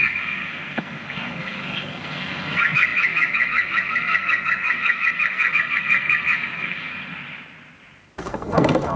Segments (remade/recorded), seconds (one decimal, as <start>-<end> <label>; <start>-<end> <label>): 0.0-6.9 remade; 6.9-8.2 recorded; 8.2-9.0 remade